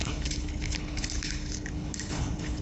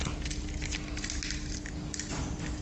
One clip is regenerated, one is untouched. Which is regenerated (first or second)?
first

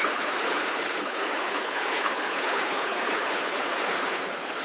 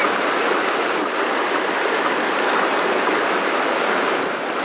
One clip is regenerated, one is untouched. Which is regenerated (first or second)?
first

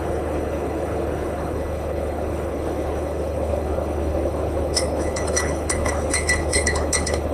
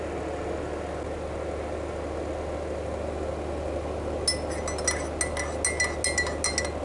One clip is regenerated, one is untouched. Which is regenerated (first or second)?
first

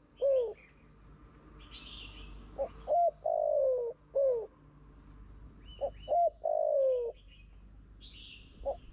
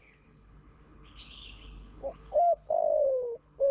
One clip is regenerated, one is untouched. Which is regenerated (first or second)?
second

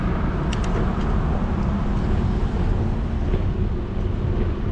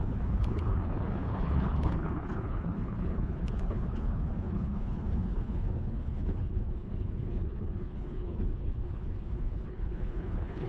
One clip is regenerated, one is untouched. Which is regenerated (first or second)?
second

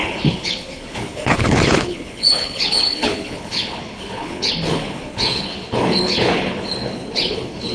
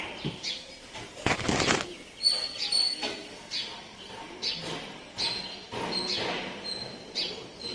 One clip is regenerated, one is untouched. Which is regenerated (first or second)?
first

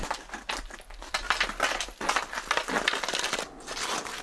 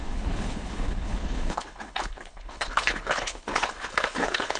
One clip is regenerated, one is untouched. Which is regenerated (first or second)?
second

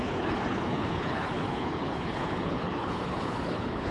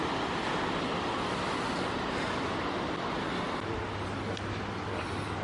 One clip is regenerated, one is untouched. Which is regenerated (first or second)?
first